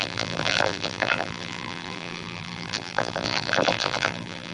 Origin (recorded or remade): remade